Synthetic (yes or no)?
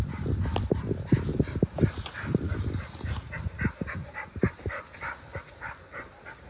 no